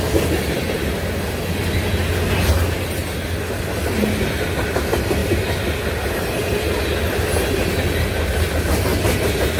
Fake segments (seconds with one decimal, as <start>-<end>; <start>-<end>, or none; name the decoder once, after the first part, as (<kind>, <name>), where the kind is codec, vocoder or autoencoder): none